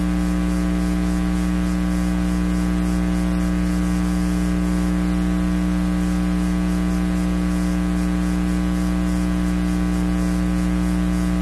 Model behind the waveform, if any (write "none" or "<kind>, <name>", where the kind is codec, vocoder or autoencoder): none